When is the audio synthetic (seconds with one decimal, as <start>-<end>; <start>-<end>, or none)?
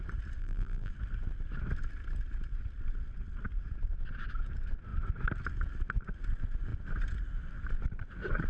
0.4-0.9